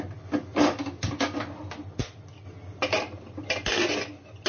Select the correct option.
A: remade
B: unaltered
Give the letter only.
B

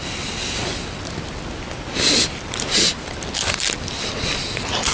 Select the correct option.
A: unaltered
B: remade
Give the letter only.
A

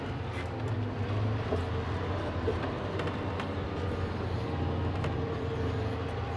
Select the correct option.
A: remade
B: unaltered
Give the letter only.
A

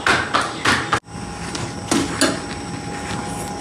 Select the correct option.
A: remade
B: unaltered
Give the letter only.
B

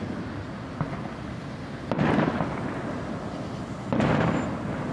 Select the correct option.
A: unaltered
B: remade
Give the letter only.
A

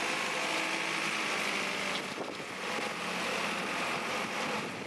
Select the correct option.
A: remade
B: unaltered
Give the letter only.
B